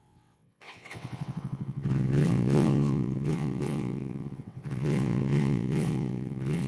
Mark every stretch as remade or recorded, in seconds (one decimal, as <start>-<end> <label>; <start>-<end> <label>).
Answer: 0.0-6.7 remade